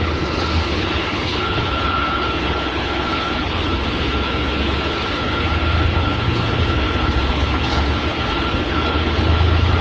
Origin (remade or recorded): remade